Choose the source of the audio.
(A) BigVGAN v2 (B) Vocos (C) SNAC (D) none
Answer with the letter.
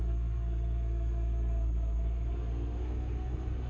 C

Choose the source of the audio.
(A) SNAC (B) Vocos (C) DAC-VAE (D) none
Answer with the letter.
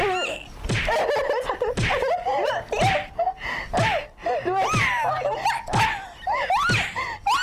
D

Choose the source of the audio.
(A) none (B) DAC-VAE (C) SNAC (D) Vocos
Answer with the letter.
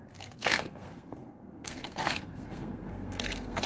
C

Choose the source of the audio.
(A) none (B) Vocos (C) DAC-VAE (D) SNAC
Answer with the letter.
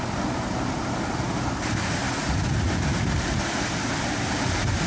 A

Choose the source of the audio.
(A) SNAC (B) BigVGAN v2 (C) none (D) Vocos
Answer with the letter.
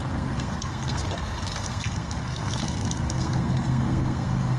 A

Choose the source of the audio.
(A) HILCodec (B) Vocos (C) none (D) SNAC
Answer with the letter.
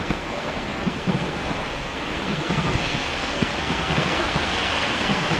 D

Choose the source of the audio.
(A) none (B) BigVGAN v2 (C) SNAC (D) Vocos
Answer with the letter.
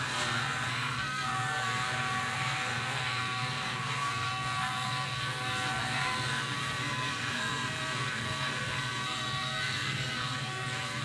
C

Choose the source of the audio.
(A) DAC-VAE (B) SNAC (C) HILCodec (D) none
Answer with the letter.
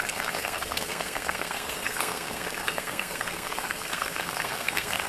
B